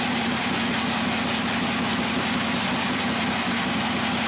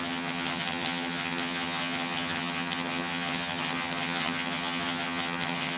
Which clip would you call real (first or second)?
first